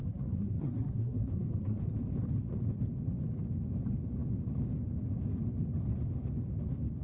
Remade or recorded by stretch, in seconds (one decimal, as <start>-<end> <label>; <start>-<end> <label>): 0.0-1.8 remade; 1.8-7.0 recorded